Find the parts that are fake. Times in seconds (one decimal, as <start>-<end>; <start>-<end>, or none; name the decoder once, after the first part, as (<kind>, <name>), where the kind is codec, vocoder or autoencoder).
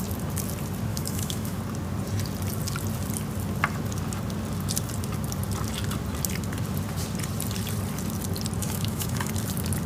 0.9-1.6 (autoencoder, DAC-VAE); 8.6-9.3